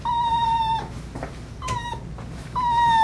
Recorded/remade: recorded